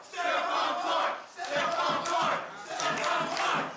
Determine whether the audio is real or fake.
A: real